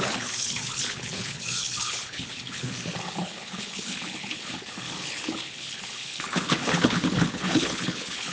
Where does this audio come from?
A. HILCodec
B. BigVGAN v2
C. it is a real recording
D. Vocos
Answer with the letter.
A